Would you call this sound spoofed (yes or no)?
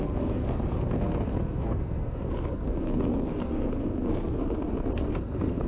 yes